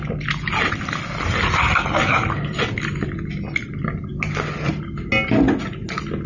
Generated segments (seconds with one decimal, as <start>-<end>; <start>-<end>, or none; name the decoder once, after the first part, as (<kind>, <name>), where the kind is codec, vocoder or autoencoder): none